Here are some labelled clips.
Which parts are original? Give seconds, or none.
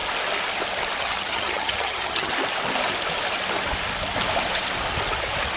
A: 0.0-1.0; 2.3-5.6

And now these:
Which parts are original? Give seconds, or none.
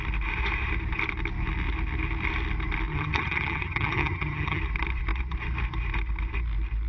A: 0.0-2.9; 4.6-6.9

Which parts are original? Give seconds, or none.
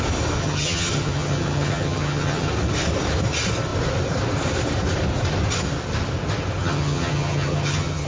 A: 0.0-0.4; 2.5-6.6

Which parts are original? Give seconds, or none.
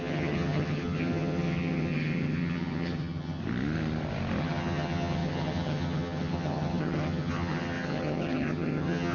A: 3.4-4.4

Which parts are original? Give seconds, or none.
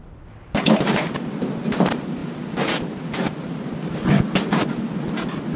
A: 0.0-5.6